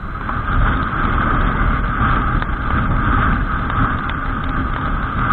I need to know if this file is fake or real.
real